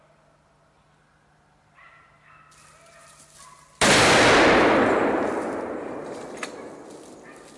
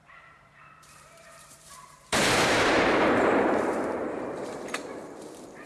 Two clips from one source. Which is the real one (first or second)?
first